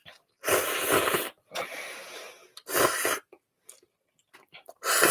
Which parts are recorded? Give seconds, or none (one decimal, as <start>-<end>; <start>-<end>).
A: 0.0-0.6; 2.0-3.6